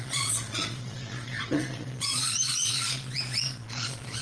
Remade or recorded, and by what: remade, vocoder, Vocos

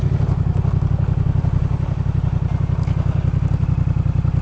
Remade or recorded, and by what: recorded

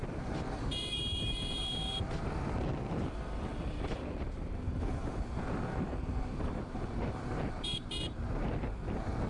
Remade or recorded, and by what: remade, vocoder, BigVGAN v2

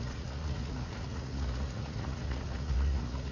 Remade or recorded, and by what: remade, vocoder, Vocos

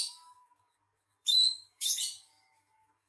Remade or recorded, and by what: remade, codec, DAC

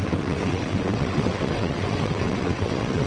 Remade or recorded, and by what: remade, vocoder, WaveNeXt